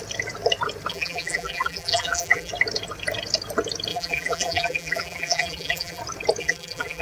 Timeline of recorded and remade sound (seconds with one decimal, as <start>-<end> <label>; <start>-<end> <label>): 0.0-0.9 recorded; 0.9-2.5 remade; 2.5-3.9 recorded; 3.9-6.0 remade; 6.0-6.4 recorded; 6.4-7.0 remade